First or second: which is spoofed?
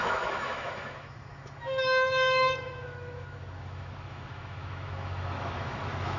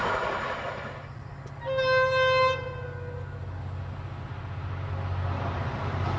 first